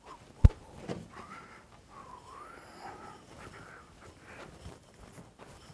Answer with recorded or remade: recorded